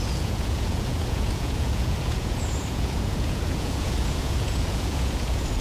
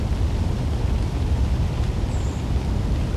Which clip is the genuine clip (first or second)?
second